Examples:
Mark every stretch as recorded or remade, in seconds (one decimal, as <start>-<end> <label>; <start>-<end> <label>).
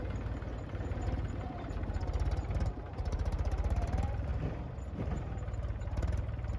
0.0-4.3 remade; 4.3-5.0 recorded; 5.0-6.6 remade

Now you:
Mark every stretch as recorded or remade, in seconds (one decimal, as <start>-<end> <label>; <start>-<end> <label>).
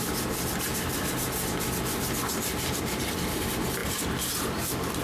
0.0-5.0 recorded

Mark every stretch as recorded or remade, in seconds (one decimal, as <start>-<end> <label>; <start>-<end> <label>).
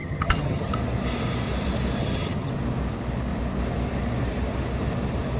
0.0-0.7 remade; 0.7-2.0 recorded; 2.0-2.5 remade; 2.5-5.4 recorded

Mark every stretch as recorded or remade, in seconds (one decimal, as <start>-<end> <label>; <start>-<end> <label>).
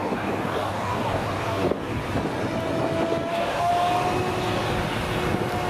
0.0-2.0 remade; 2.0-3.3 recorded; 3.3-3.7 remade; 3.7-5.7 recorded